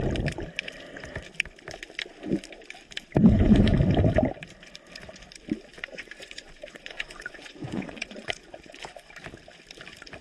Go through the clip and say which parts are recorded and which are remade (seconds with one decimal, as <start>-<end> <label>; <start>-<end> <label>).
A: 0.0-5.7 recorded; 5.7-9.1 remade; 9.1-10.2 recorded